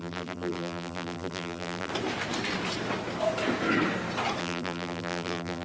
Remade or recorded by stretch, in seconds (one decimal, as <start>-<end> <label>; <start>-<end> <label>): 0.0-1.9 remade; 1.9-4.4 recorded; 4.4-5.6 remade

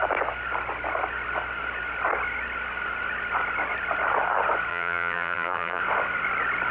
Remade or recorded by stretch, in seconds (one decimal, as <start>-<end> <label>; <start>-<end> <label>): 0.0-4.7 recorded; 4.7-5.8 remade; 5.8-6.7 recorded